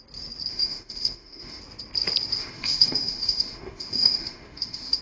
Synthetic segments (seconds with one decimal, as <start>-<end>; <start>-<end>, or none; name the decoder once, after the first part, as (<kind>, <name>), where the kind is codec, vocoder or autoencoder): 0.5-1.6 (autoencoder, DAC-VAE); 2.4-5.0